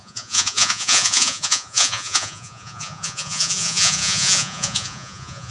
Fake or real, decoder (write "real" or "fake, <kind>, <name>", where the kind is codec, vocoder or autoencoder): fake, vocoder, Vocos